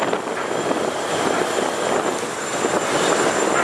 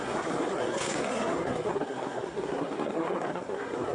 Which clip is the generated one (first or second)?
second